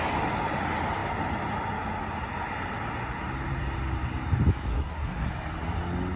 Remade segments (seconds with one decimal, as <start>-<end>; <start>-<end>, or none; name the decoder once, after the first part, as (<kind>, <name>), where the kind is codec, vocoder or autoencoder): 4.7-5.3 (codec, SNAC)